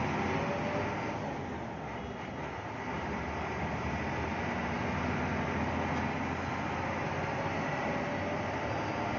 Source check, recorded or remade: recorded